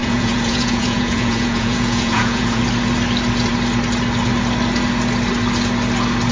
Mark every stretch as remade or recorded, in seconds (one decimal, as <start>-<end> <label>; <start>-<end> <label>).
0.0-2.6 remade; 2.6-6.3 recorded